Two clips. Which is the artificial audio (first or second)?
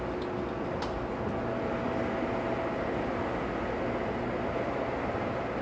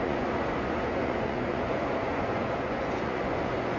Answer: second